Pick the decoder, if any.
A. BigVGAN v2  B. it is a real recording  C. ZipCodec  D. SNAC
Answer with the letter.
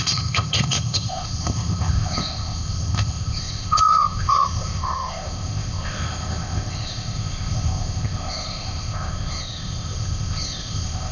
C